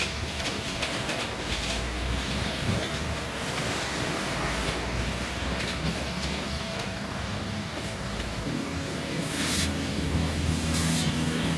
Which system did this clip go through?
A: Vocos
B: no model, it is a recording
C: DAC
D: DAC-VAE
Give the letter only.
C